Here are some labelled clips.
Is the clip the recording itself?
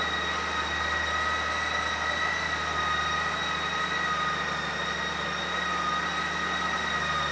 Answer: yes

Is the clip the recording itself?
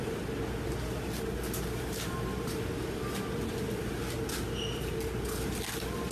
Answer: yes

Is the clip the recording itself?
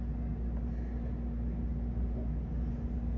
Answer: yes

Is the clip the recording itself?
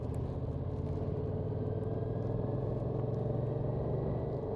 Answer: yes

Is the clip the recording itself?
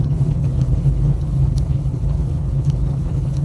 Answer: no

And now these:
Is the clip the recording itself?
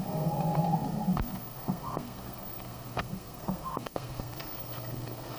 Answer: no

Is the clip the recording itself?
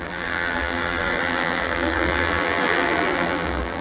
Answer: no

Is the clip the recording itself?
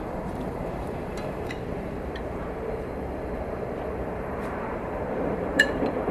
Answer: no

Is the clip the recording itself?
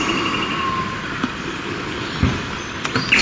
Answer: yes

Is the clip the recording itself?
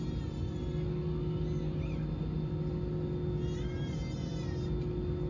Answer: yes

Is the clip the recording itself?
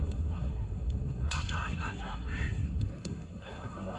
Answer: no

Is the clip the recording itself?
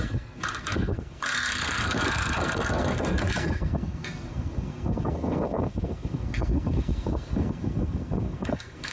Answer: no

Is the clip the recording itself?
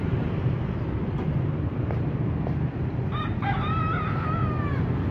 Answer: yes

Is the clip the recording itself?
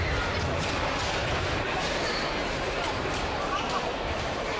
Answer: no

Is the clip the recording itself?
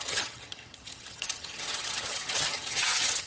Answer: no